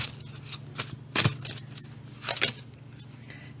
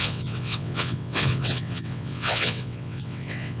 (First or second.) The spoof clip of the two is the second